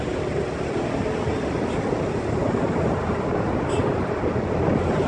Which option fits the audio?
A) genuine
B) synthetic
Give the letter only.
A